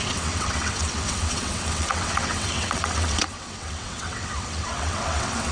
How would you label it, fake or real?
fake